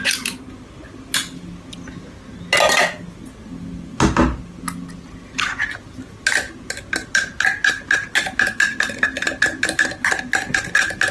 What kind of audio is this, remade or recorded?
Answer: recorded